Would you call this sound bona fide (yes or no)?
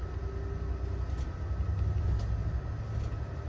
yes